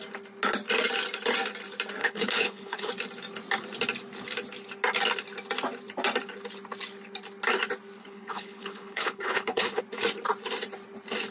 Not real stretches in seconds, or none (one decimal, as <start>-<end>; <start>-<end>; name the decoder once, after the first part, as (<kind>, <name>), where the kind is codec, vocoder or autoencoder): 2.0-2.9 (codec, HILCodec); 8.0-9.8